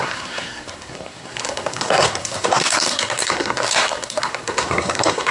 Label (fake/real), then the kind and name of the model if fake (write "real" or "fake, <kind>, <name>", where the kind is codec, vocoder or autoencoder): fake, codec, SNAC